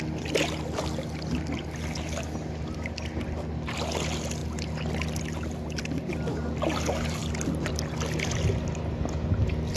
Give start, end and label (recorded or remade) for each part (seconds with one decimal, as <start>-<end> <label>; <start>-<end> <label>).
0.0-7.2 recorded; 7.2-7.7 remade; 7.7-9.8 recorded